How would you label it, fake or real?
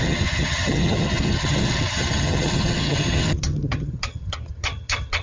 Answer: fake